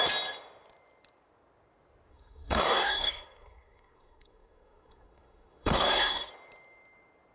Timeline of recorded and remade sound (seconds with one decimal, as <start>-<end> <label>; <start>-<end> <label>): 0.0-2.1 recorded; 2.1-6.3 remade; 6.3-7.3 recorded